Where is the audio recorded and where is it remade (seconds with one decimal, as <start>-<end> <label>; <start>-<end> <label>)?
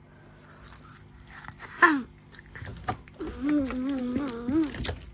0.0-5.1 recorded